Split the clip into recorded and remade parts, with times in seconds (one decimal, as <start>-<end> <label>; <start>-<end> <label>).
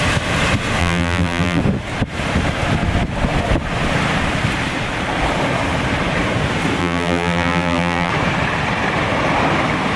0.0-0.8 recorded; 0.8-1.6 remade; 1.6-6.8 recorded; 6.8-8.1 remade; 8.1-10.0 recorded